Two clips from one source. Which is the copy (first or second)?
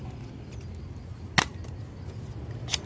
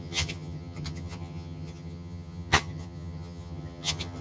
second